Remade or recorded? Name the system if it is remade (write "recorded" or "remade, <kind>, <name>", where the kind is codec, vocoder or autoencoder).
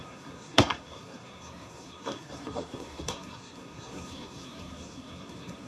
remade, codec, SNAC